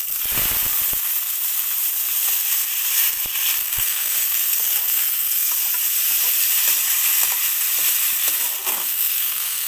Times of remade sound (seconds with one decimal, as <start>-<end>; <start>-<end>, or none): 3.6-5.5; 8.7-9.7